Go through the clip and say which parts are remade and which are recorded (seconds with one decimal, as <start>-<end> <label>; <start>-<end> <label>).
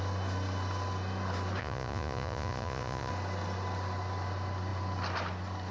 0.0-1.6 recorded; 1.6-3.1 remade; 3.1-5.7 recorded